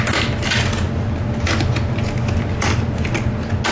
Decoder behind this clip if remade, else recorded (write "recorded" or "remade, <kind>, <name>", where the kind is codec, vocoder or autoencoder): recorded